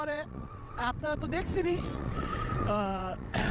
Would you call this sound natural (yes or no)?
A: no